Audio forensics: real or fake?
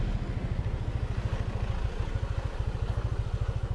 real